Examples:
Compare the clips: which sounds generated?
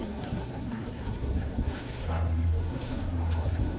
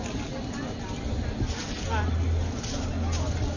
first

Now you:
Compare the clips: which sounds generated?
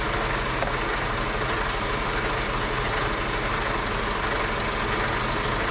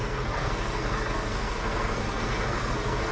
second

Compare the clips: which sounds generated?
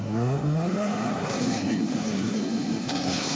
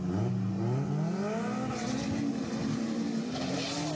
first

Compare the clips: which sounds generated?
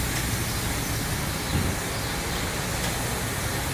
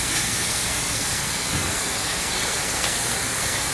second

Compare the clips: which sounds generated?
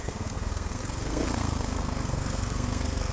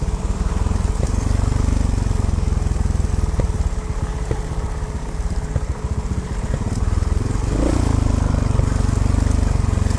first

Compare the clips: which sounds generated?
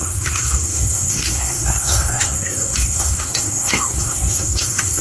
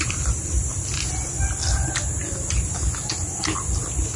first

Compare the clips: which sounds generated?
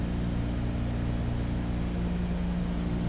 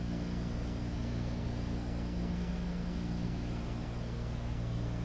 second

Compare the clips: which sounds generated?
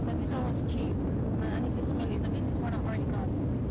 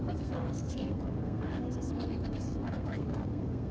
second